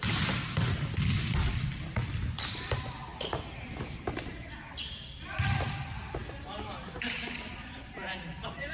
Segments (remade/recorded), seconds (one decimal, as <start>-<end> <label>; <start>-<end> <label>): 0.0-3.1 remade; 3.1-4.2 recorded; 4.2-8.7 remade